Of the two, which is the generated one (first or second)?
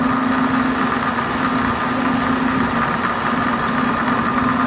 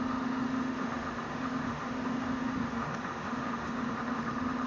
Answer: second